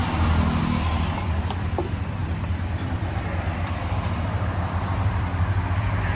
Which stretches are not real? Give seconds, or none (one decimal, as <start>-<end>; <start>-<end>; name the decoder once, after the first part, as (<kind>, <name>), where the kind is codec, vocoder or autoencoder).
0.0-0.6 (vocoder, BigVGAN v2); 2.2-5.8